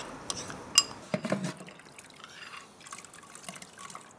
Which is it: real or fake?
real